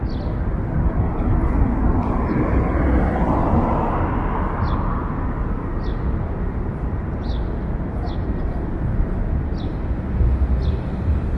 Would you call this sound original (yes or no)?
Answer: yes